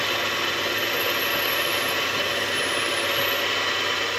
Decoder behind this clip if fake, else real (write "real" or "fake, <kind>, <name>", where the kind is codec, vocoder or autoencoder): real